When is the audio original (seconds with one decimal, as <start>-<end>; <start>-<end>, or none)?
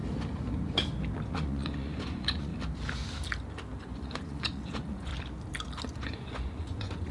0.0-1.3; 2.5-3.8; 5.1-5.9